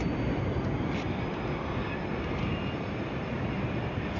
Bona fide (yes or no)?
yes